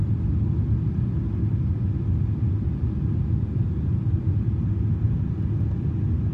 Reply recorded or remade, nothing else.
recorded